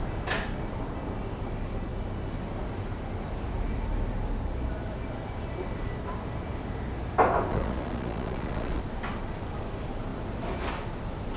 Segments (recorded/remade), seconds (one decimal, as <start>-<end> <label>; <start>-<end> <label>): 0.0-7.5 recorded; 7.5-8.8 remade; 8.8-11.4 recorded